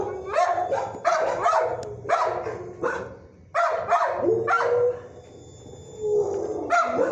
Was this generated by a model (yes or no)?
no